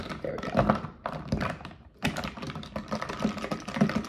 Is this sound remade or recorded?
remade